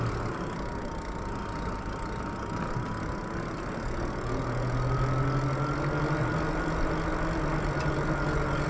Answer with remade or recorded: recorded